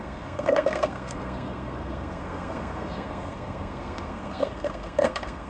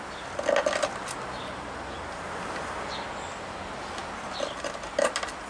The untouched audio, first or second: second